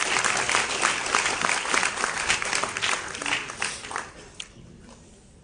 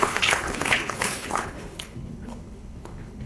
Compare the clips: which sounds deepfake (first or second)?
second